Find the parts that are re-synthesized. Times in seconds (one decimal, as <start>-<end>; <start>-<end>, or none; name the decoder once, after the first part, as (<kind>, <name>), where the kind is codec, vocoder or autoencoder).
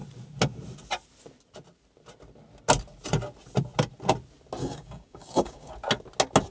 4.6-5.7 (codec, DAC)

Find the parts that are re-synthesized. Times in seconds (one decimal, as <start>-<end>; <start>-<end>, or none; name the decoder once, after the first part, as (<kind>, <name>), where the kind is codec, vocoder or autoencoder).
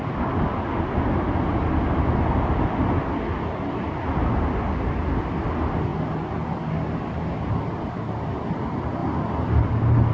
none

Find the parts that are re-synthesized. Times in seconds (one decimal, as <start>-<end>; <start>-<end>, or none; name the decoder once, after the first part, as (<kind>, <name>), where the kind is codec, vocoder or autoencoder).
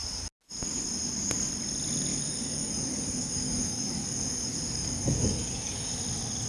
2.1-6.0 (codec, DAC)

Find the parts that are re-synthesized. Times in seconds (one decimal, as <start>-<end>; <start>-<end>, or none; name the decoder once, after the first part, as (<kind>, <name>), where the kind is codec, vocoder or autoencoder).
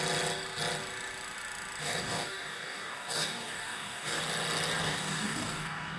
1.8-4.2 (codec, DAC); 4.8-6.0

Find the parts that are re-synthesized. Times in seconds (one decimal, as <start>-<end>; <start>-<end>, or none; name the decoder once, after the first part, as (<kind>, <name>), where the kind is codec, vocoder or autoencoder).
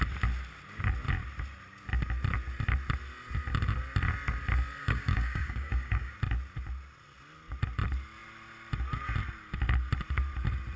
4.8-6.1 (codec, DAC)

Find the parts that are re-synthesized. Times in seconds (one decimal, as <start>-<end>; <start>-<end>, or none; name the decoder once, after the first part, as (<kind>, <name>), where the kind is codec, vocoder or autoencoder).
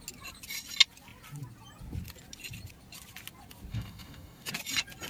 3.7-4.5 (codec, DAC)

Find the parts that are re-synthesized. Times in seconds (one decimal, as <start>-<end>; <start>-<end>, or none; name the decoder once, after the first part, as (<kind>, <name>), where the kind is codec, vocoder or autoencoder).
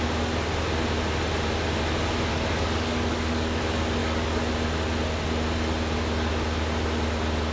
2.3-3.6 (codec, DAC); 4.0-4.5